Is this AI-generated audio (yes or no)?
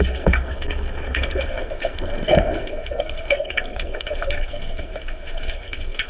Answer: yes